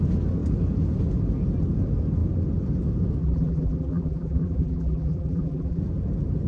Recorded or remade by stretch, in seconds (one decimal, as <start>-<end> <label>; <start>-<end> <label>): 0.0-3.2 recorded; 3.2-5.8 remade; 5.8-6.5 recorded